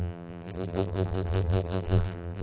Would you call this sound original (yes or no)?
no